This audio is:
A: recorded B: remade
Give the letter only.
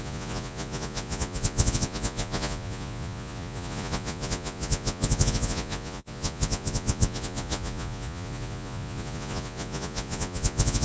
B